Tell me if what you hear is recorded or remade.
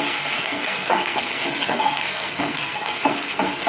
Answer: remade